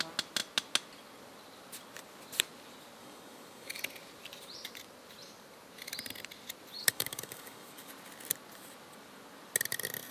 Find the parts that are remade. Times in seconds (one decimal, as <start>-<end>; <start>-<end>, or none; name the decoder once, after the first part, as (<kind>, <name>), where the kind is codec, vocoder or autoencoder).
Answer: 3.0-3.8 (codec, DAC); 6.8-7.9